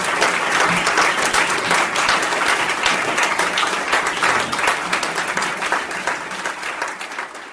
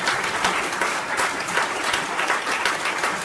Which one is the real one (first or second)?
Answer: first